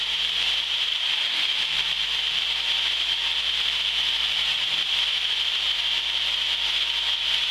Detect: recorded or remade remade